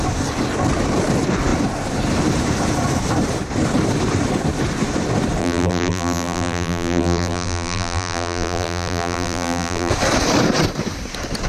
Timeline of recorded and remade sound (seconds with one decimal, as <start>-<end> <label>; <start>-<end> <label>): 0.0-5.4 recorded; 5.4-9.9 remade; 9.9-11.5 recorded